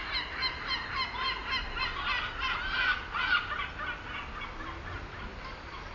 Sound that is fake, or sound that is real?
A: real